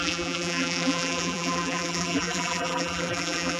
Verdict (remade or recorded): remade